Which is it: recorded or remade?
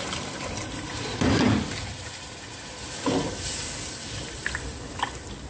recorded